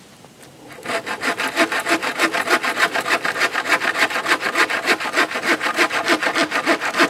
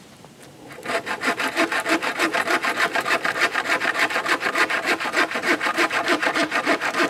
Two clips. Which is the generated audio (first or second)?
second